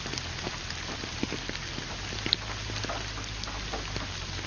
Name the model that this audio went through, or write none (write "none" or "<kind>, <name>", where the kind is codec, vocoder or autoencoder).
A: none